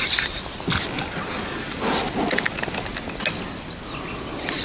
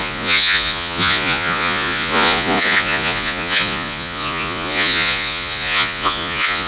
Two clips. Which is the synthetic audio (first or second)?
second